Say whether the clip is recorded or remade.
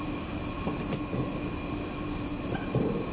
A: recorded